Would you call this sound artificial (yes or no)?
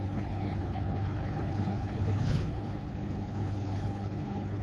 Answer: yes